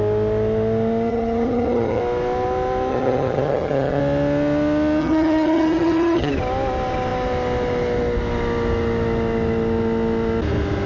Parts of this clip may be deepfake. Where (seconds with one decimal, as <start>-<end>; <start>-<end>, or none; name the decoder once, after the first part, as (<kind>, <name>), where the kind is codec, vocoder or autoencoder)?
1.1-2.0 (vocoder, HiFi-GAN); 2.9-4.0; 5.0-6.3